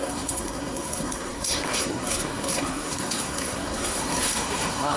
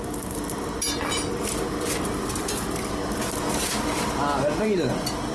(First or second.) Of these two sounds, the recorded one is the second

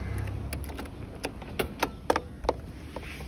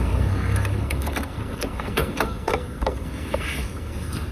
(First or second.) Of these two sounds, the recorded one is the first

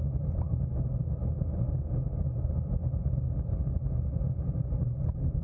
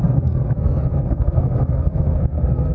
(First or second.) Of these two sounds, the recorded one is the first